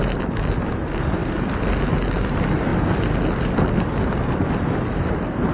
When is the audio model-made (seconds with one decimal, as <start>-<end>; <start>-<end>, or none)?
none